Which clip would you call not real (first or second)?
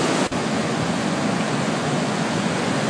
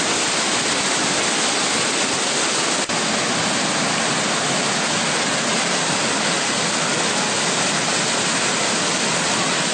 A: first